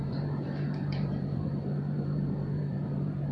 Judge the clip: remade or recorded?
remade